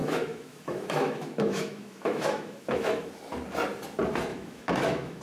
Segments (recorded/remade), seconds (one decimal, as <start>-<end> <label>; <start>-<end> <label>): 0.0-3.1 remade; 3.1-4.3 recorded; 4.3-5.2 remade

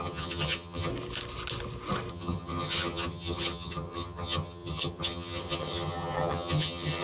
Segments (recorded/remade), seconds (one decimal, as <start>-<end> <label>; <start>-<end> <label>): 0.0-0.9 remade; 0.9-2.1 recorded; 2.1-7.0 remade

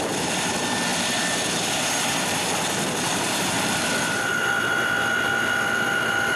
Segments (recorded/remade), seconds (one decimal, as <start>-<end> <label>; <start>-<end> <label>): 0.0-0.9 recorded; 0.9-4.7 remade; 4.7-6.4 recorded